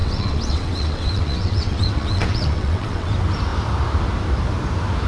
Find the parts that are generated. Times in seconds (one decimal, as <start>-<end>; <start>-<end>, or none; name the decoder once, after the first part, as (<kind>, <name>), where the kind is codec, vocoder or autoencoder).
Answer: 0.0-3.1 (vocoder, WaveNeXt)